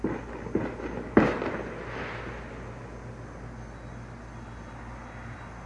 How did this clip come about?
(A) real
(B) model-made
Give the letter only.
A